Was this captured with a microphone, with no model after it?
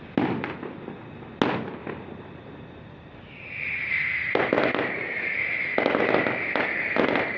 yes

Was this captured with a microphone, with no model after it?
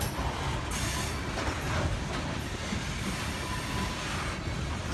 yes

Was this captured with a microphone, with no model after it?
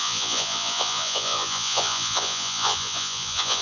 no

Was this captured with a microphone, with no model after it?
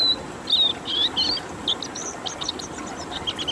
yes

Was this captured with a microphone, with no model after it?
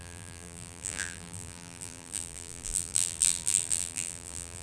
no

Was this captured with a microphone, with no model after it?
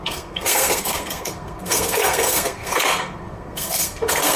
no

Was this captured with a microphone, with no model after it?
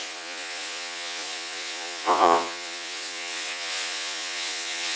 no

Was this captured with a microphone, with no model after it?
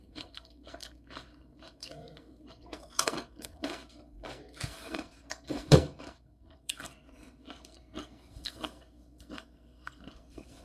no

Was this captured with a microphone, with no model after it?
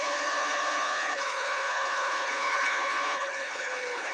no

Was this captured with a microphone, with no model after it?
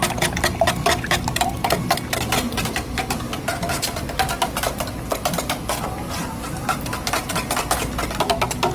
yes